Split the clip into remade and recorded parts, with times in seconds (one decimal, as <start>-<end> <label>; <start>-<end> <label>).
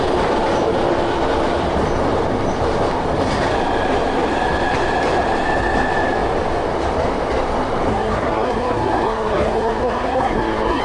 0.0-7.9 recorded; 7.9-10.8 remade